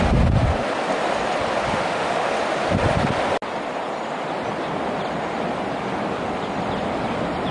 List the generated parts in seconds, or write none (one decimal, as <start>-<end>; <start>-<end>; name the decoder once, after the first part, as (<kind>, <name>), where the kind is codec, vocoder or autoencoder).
1.7-2.3 (autoencoder, DAC-VAE)